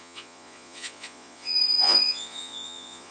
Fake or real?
fake